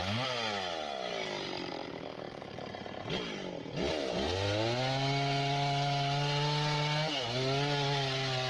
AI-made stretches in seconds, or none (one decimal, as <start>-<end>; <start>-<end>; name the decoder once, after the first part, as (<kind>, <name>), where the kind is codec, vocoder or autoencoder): none